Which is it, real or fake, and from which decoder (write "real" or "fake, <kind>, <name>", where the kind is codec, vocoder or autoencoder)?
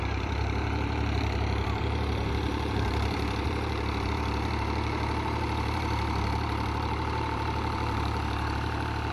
fake, vocoder, BigVGAN v2